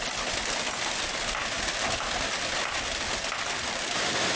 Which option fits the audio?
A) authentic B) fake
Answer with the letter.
A